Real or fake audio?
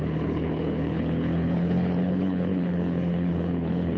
fake